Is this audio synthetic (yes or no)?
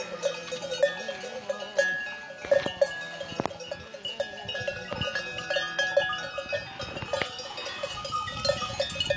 no